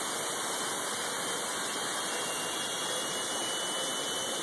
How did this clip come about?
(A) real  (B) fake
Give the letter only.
A